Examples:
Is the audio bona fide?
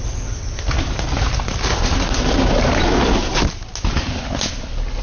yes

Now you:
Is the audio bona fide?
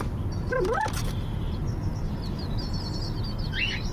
yes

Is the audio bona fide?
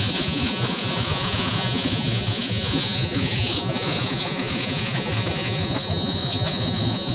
no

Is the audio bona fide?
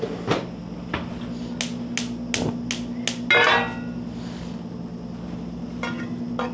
yes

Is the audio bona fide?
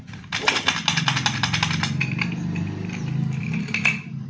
yes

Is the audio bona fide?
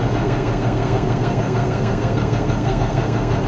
no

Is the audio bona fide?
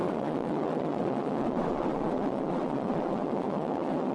no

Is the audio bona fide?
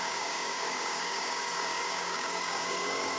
no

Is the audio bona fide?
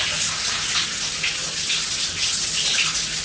yes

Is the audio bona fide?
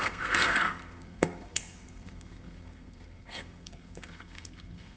no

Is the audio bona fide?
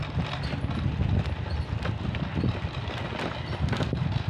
yes